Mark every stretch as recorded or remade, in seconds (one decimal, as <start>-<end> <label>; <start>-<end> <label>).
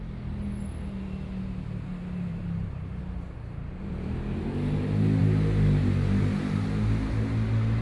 0.0-2.3 recorded; 2.3-3.0 remade; 3.0-7.8 recorded